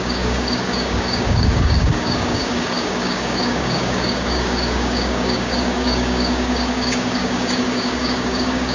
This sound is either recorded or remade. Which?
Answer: remade